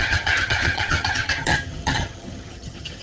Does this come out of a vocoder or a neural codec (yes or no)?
yes